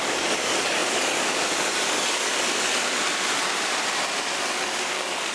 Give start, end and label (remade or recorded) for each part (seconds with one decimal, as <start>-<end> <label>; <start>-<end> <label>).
0.0-2.7 remade; 2.7-4.4 recorded; 4.4-5.3 remade